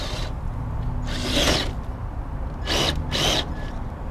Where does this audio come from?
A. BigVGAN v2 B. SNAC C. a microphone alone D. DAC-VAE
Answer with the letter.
C